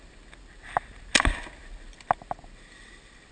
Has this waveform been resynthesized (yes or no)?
no